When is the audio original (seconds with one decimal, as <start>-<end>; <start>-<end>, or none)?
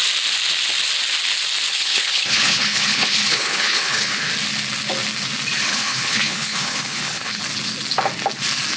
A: 0.0-1.7; 4.3-5.7; 7.4-8.8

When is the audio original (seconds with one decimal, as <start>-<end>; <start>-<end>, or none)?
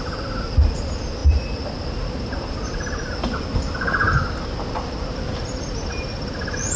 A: 0.0-6.8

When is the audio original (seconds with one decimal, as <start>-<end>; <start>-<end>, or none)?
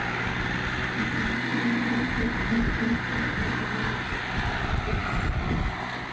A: 0.0-6.1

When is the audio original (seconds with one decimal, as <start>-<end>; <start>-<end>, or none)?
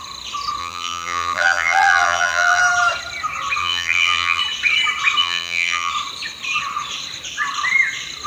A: 0.0-0.6; 2.6-3.6; 4.4-5.2; 5.9-8.3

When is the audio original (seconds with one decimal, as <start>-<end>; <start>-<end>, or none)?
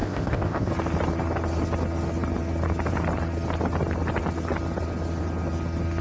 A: 0.7-6.0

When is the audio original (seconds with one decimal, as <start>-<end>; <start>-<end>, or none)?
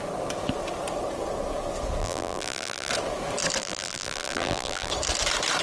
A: 0.0-2.0; 2.9-3.6; 4.9-5.6